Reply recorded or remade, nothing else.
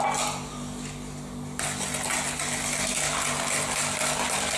recorded